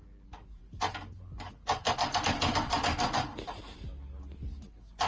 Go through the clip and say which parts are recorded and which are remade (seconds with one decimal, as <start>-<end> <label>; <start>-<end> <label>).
0.0-5.1 recorded